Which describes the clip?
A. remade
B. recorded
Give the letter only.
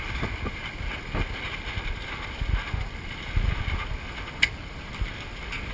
B